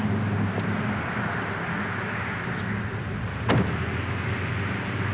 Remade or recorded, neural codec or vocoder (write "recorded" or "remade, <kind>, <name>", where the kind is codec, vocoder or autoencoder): recorded